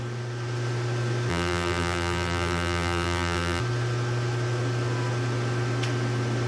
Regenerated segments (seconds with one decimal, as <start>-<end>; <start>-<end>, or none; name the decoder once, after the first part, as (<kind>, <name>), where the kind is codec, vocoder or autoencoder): 1.3-3.6 (vocoder, BigVGAN v2)